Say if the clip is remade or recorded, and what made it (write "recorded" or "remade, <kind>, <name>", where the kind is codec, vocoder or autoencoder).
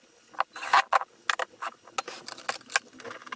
recorded